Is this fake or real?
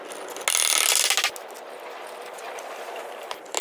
real